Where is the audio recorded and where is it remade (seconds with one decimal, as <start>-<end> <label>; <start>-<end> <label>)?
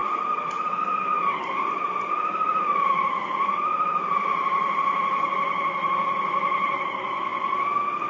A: 0.0-8.1 recorded